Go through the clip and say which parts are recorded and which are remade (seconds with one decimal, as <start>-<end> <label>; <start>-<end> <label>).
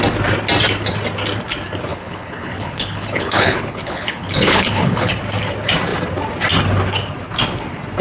0.0-1.9 recorded; 1.9-5.1 remade; 5.1-8.0 recorded